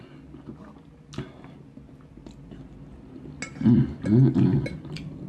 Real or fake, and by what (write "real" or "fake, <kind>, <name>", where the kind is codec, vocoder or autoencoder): real